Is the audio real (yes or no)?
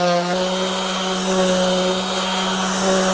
yes